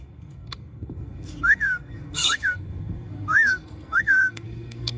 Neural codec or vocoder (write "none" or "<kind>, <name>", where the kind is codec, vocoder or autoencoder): codec, SNAC